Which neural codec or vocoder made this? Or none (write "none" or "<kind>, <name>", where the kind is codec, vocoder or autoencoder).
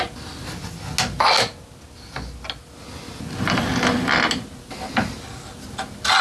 none